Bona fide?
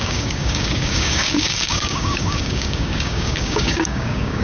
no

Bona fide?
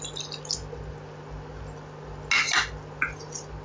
yes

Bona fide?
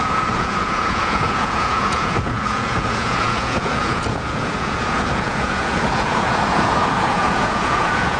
no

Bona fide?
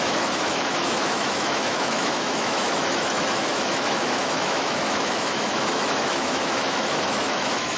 no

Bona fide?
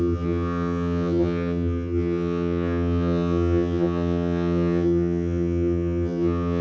no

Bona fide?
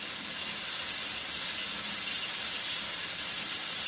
yes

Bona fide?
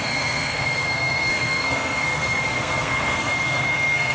no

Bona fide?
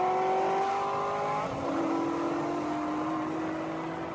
yes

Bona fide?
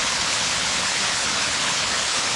no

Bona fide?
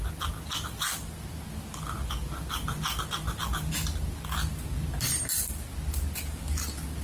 yes